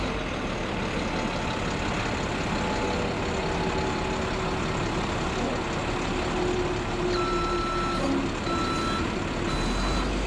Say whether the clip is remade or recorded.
recorded